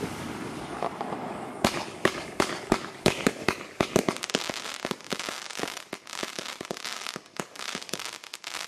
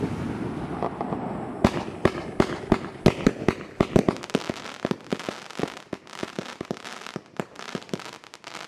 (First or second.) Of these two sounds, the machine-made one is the first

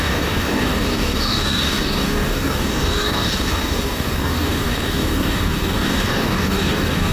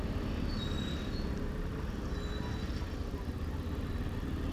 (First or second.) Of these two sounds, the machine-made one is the first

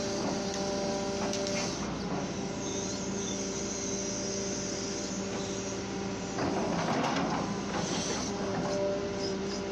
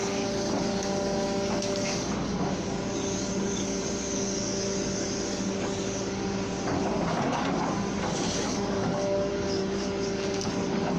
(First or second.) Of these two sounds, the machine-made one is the second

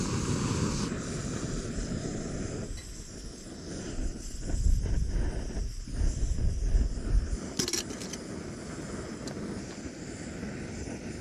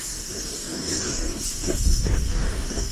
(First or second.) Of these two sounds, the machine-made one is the second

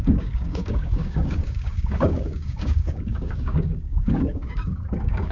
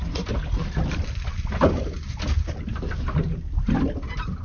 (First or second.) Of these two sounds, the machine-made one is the first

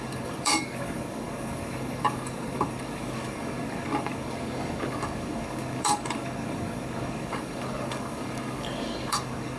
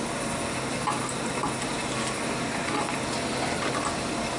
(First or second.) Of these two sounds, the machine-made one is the first